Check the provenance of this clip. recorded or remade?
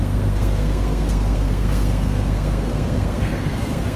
remade